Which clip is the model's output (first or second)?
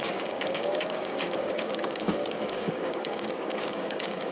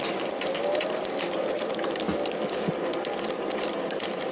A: first